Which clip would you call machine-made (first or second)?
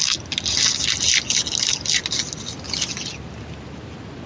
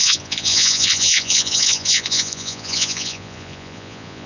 second